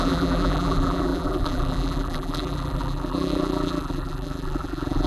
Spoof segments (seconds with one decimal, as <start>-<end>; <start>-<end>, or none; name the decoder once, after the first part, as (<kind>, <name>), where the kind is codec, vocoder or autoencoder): 0.0-5.1 (vocoder, BigVGAN v2)